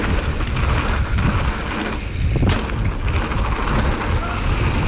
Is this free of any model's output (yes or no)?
yes